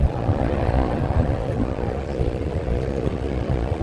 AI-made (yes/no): yes